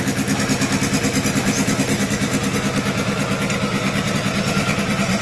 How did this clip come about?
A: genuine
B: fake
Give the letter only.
A